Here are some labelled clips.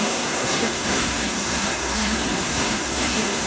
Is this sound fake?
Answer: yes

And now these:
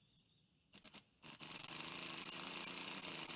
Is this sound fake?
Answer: no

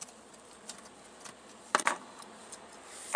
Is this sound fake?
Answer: no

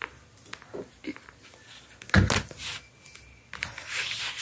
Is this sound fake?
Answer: no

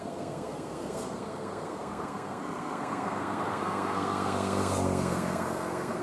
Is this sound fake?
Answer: yes